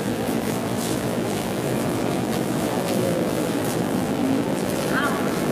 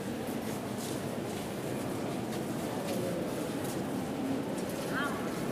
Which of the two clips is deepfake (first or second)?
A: first